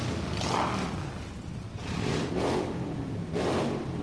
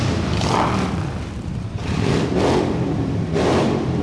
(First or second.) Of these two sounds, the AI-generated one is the second